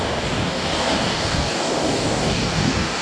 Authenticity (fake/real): fake